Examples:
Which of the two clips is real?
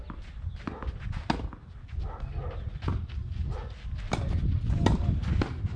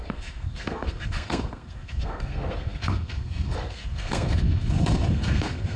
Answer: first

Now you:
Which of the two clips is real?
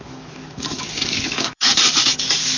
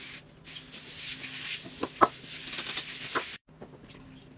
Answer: second